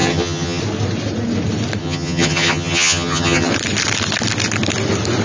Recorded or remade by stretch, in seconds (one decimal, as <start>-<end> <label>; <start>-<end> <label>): 0.0-0.6 remade; 0.6-1.8 recorded; 1.8-3.5 remade; 3.5-5.2 recorded